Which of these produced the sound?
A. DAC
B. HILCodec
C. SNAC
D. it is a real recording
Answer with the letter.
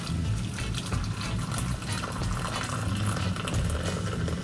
D